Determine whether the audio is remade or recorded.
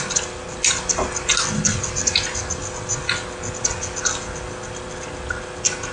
recorded